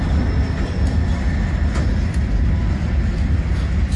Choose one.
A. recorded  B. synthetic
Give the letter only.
A